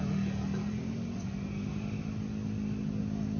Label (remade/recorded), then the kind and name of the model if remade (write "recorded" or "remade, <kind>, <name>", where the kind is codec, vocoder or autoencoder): recorded